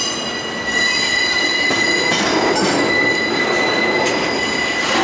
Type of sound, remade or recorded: recorded